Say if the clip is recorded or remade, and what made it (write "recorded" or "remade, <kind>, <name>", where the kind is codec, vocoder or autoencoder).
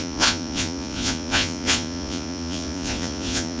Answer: remade, vocoder, Vocos